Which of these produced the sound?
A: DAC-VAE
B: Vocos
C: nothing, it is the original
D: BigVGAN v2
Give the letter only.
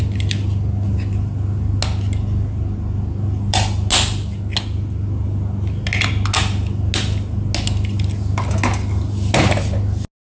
C